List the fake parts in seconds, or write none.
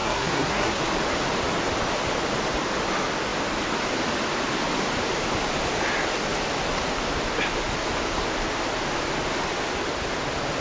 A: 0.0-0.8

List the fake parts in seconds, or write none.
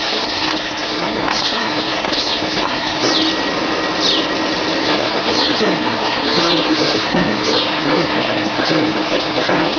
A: 0.0-3.1; 4.8-9.8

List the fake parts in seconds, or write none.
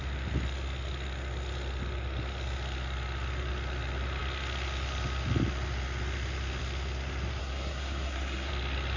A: 7.4-8.5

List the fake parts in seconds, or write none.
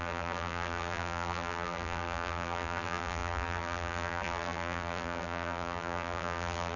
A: 0.0-6.8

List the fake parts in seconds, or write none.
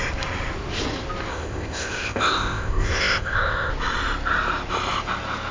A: 1.3-3.7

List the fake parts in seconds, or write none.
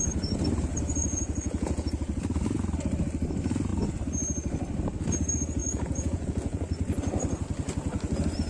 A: 1.0-1.9; 5.6-6.6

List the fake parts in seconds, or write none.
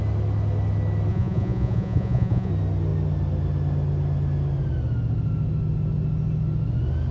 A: 1.1-2.5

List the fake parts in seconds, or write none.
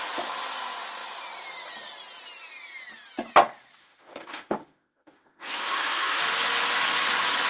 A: 3.8-6.2